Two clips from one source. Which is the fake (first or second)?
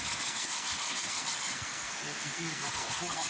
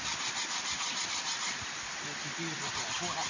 first